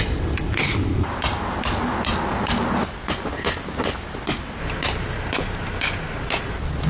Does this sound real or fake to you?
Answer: real